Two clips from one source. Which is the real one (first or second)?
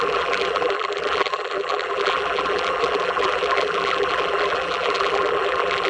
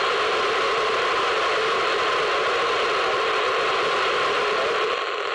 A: second